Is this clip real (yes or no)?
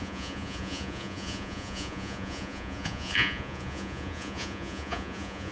no